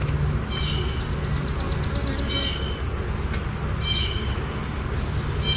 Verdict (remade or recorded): recorded